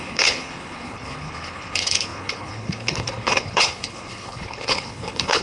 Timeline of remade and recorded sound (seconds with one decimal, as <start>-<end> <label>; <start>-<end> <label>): 0.0-5.4 remade